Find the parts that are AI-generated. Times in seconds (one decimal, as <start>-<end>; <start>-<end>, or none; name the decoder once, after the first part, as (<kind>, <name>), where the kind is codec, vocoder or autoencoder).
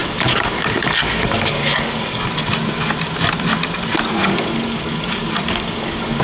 0.0-2.3 (codec, DAC); 4.2-6.2